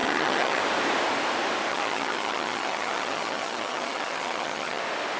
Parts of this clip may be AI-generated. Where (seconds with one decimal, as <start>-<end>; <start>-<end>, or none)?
0.0-0.6; 1.7-4.8